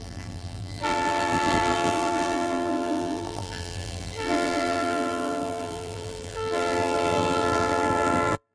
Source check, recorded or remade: remade